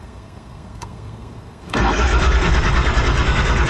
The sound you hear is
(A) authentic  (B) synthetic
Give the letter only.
B